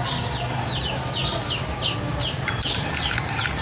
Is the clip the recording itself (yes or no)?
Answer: yes